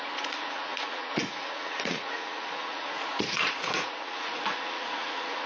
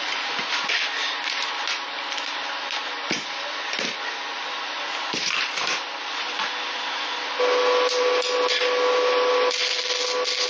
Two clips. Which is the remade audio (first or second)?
first